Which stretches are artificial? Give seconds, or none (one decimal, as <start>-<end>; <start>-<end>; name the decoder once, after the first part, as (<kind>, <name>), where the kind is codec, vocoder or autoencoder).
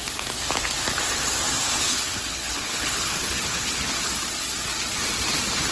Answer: 1.7-4.1 (codec, HILCodec)